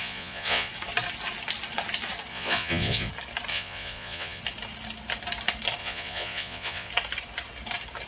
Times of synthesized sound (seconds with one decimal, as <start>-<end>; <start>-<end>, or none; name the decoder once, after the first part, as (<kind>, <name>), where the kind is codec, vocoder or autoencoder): 0.0-0.7 (vocoder, Vocos); 2.3-3.1; 3.5-4.4; 5.8-6.9